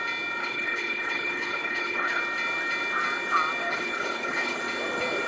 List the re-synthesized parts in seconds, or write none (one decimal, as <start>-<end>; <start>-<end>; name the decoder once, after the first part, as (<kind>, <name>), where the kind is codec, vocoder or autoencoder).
0.4-2.2 (codec, HILCodec); 3.6-4.6